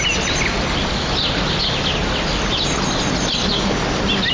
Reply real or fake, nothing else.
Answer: real